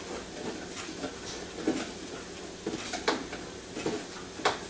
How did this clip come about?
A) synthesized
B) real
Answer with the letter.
B